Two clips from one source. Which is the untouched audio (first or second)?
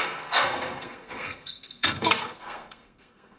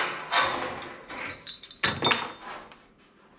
second